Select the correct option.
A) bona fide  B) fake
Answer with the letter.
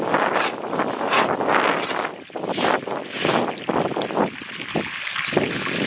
A